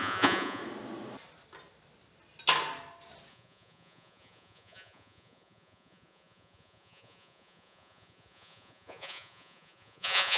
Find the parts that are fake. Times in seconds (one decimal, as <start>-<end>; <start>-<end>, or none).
0.0-0.6; 3.3-10.4

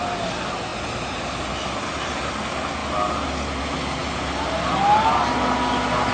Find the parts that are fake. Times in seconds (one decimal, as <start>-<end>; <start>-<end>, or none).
none

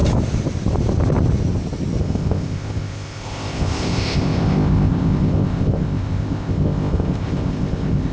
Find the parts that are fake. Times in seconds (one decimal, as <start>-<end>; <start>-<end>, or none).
2.0-8.1

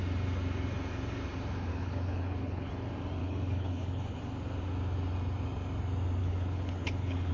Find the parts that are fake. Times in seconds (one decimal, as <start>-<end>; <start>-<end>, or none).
1.7-2.7; 3.2-4.2; 6.2-7.3

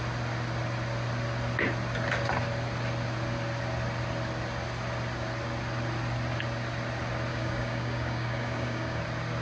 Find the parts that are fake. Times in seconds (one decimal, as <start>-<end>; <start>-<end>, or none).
7.3-9.0